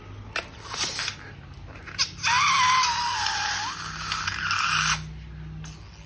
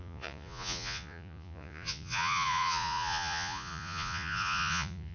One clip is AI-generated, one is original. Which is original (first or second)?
first